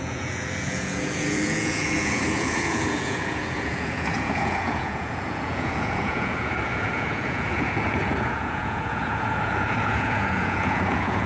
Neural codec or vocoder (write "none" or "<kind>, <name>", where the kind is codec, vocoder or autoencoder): vocoder, Vocos